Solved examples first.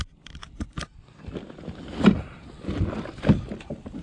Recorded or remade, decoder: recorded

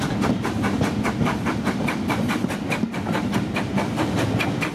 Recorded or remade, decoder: remade, vocoder, BigVGAN v2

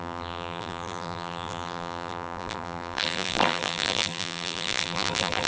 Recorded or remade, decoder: remade, vocoder, BigVGAN v2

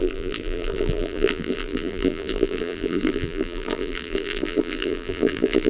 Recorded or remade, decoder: remade, vocoder, BigVGAN v2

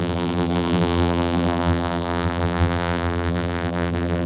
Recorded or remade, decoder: remade, vocoder, BigVGAN v2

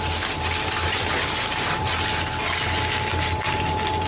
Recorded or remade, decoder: recorded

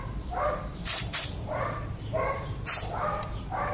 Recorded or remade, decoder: remade, vocoder, BigVGAN v2